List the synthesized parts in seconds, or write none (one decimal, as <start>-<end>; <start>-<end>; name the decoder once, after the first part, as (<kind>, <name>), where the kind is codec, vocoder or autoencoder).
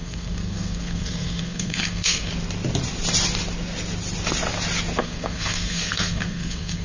0.0-2.3 (codec, SNAC); 5.0-6.8